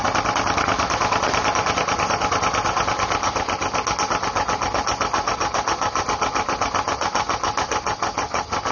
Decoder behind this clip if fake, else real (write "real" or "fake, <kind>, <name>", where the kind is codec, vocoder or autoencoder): real